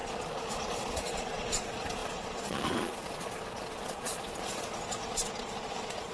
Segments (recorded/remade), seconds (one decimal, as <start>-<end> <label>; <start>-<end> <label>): 0.0-6.1 remade